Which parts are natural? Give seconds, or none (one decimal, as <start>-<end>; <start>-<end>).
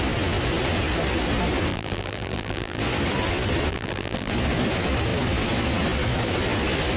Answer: 0.0-1.7; 2.8-3.7; 4.3-7.0